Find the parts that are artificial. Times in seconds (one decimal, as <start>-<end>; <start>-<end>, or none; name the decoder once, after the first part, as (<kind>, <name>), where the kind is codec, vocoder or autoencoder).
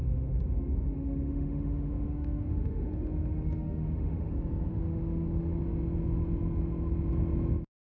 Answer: 0.0-4.3 (autoencoder, DAC-VAE); 4.7-5.6